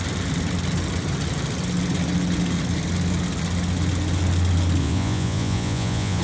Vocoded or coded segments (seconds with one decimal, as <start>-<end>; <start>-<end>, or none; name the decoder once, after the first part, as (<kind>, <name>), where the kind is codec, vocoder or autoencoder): 4.8-6.2 (vocoder, Vocos)